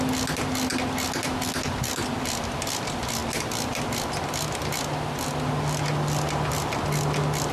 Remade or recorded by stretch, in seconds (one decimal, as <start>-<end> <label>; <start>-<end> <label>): 0.0-7.5 recorded